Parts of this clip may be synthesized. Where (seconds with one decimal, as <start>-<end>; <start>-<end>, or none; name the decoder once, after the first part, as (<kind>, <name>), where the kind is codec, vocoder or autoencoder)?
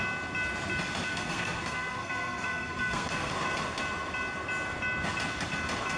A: 1.1-3.3 (codec, SNAC)